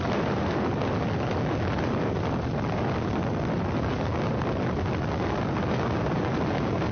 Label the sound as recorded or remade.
recorded